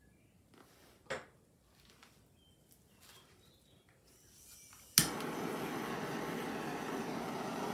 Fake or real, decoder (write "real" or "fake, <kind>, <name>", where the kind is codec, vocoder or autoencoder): real